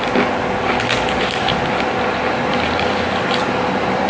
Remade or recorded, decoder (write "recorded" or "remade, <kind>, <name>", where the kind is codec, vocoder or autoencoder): recorded